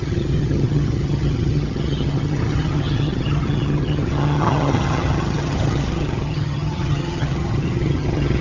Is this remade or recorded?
remade